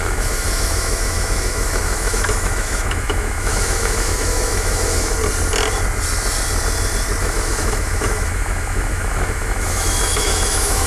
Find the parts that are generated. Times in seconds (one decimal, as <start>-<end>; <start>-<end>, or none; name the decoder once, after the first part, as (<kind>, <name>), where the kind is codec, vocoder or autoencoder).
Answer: 0.0-5.2 (autoencoder, DAC-VAE); 7.2-10.9